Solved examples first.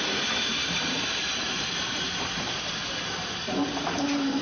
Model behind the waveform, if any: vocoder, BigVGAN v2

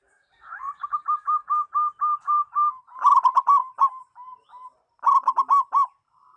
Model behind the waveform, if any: vocoder, BigVGAN v2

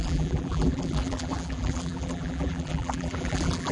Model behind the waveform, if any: vocoder, BigVGAN v2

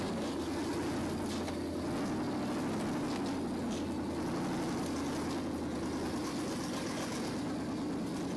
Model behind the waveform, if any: none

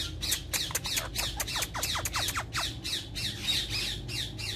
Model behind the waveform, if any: none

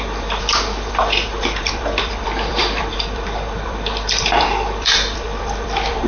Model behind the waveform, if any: vocoder, BigVGAN v2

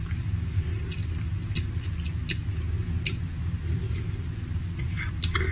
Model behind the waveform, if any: none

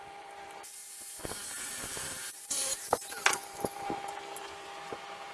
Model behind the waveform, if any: vocoder, BigVGAN v2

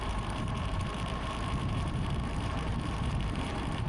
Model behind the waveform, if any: vocoder, BigVGAN v2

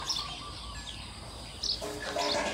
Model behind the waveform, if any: none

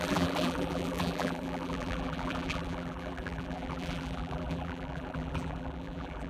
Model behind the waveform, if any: vocoder, BigVGAN v2